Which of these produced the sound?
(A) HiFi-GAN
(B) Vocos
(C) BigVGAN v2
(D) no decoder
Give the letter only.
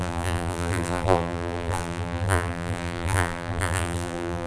C